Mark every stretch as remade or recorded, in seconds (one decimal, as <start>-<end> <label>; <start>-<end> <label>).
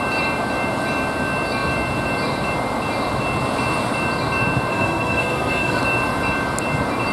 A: 0.0-4.7 recorded; 4.7-5.8 remade; 5.8-7.1 recorded